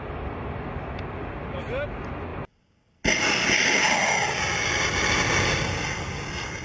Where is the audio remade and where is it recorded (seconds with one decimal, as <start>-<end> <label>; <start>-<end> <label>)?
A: 0.0-6.6 recorded